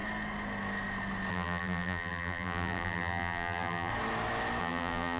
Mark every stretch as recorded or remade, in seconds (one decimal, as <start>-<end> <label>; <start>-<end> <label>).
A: 0.0-1.3 recorded; 1.3-3.9 remade; 3.9-4.6 recorded; 4.6-5.2 remade